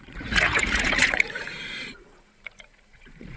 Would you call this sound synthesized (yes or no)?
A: yes